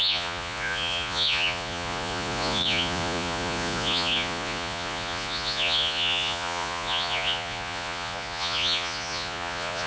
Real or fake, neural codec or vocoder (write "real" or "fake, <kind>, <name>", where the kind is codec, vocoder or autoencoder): fake, vocoder, Vocos